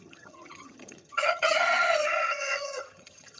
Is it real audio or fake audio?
fake